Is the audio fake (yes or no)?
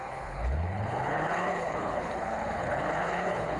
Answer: yes